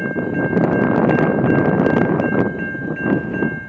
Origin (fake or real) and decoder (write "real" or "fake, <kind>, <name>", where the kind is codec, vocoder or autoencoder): real